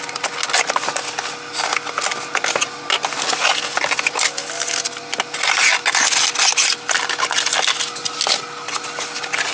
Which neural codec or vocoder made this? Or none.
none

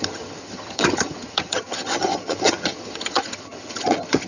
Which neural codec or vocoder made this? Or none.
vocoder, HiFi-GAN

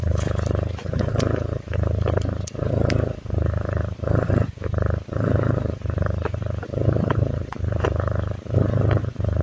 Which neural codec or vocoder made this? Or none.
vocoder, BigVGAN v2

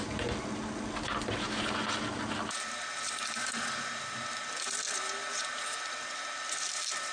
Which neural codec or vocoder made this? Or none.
none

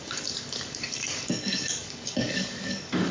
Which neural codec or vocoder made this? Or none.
codec, DAC